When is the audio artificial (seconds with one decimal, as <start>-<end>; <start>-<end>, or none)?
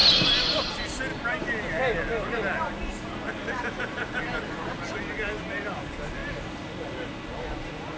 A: 0.0-0.7